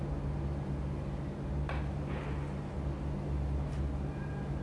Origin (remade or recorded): recorded